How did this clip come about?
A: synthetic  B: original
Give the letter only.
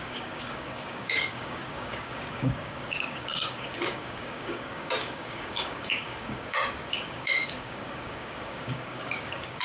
A